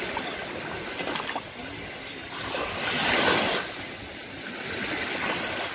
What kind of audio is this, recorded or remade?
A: recorded